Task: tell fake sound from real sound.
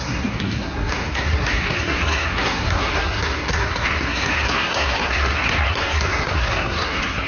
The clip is fake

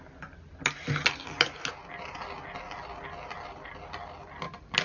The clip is real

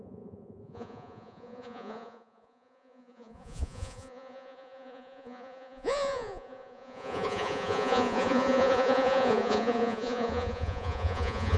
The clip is fake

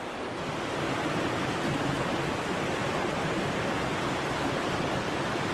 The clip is real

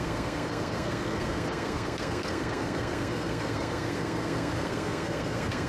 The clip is fake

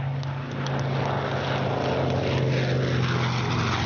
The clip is real